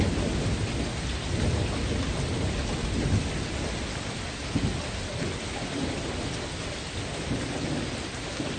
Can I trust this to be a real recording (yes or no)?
yes